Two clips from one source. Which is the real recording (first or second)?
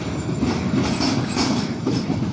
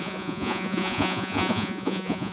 first